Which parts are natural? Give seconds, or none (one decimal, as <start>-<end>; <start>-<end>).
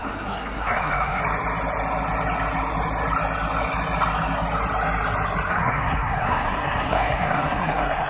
1.2-5.5